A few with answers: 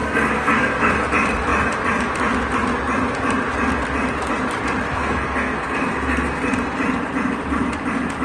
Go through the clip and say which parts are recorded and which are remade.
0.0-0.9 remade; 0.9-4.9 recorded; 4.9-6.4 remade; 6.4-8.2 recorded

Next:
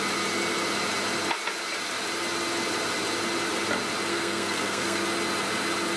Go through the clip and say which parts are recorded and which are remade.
0.0-4.1 recorded; 4.1-5.0 remade; 5.0-6.0 recorded

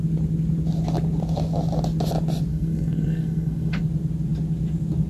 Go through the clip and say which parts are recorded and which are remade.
0.0-2.5 recorded; 2.5-3.8 remade; 3.8-5.1 recorded

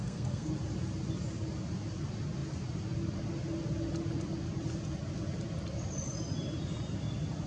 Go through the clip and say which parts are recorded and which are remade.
0.0-0.5 remade; 0.5-7.5 recorded

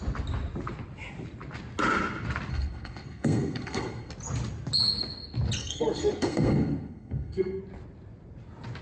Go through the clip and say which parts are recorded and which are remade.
0.0-2.5 recorded; 2.5-4.1 remade; 4.1-5.6 recorded; 5.6-7.6 remade; 7.6-8.8 recorded

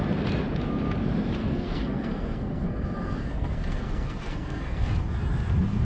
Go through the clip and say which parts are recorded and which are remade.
0.0-1.4 recorded; 1.4-4.9 remade; 4.9-5.8 recorded

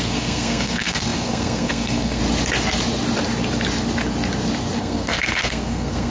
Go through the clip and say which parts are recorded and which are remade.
0.0-2.2 remade; 2.2-4.8 recorded; 4.8-6.1 remade